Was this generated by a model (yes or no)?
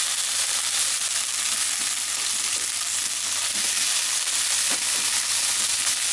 no